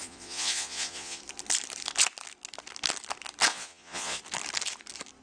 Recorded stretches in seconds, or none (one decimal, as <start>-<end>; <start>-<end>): 1.2-3.5; 4.2-5.2